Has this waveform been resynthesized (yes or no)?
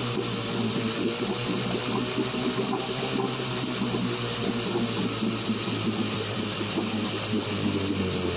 no